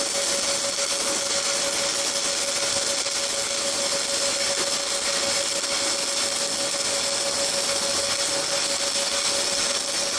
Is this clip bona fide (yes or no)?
yes